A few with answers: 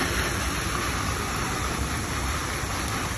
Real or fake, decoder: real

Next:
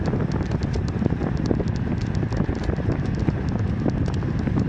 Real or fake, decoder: real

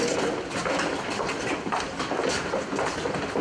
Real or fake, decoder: real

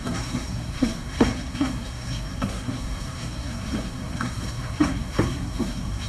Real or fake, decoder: fake, codec, SNAC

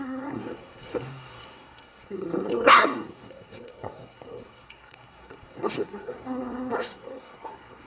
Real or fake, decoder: fake, codec, SNAC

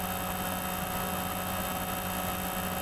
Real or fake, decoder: real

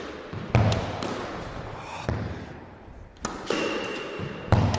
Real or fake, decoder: real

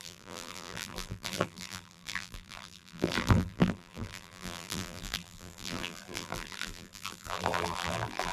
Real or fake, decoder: fake, vocoder, BigVGAN v2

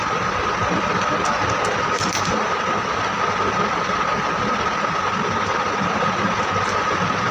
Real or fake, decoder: real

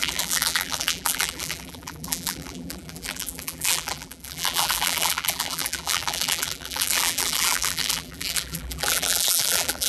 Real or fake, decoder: fake, vocoder, BigVGAN v2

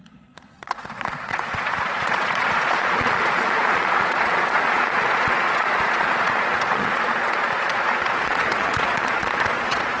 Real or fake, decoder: fake, vocoder, Vocos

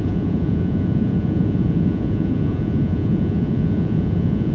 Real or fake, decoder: fake, vocoder, Vocos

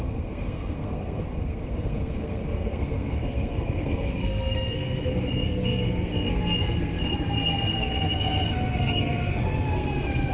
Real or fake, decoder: fake, codec, SNAC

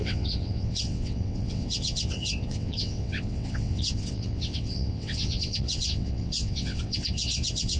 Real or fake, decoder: fake, vocoder, WaveNeXt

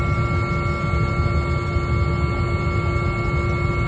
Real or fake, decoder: real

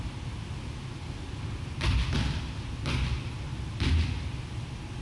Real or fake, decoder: real